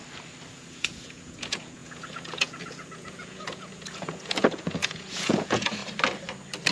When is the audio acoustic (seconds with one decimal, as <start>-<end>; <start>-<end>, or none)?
0.0-0.5; 5.8-6.7